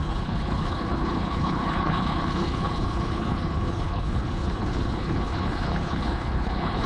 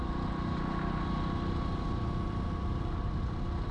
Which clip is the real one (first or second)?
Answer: second